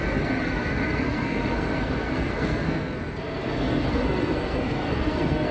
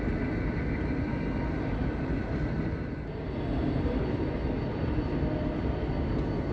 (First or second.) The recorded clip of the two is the second